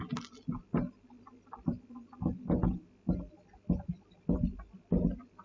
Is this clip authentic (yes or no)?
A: yes